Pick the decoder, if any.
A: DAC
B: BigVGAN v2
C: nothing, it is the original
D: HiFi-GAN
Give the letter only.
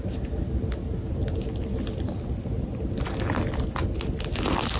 C